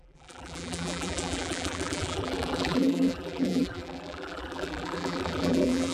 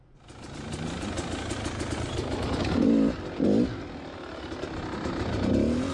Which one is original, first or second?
second